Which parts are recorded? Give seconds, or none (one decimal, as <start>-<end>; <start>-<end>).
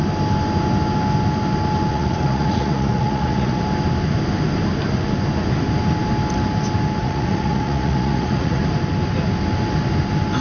0.0-1.9; 3.6-7.0; 8.6-10.4